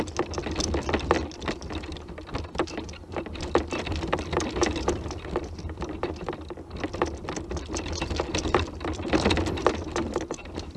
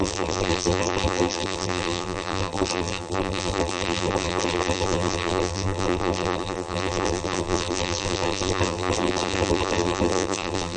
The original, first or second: first